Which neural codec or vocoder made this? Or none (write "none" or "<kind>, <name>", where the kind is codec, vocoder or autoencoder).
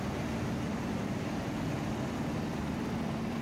none